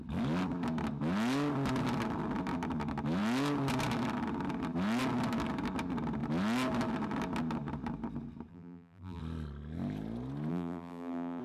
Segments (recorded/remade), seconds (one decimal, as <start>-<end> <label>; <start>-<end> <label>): 0.0-8.5 recorded; 8.5-9.2 remade; 9.2-10.5 recorded; 10.5-11.4 remade